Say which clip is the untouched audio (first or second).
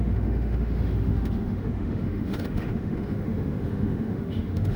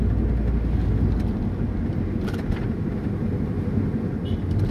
second